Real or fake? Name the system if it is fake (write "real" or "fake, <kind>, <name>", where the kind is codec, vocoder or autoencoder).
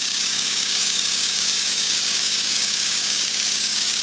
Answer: fake, codec, DAC